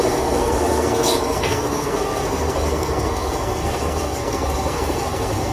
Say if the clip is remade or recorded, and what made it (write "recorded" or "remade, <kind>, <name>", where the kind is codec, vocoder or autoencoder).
remade, codec, SNAC